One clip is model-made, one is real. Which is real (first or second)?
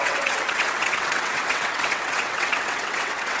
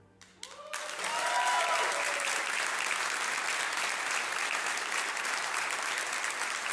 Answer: second